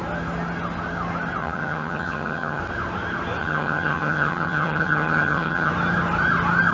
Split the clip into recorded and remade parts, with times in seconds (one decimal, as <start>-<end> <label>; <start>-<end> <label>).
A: 0.0-1.4 recorded; 1.4-2.6 remade; 2.6-3.4 recorded; 3.4-5.7 remade; 5.7-6.7 recorded